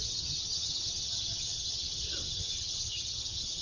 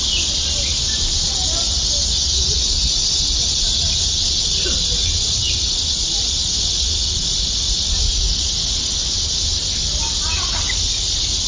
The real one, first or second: second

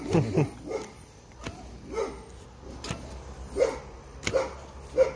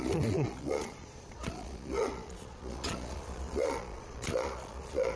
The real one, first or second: first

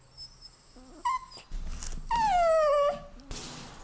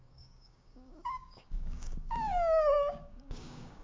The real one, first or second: first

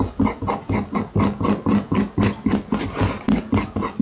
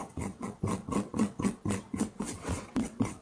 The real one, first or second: first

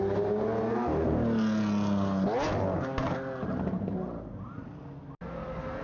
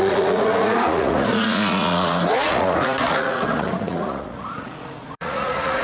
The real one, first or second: first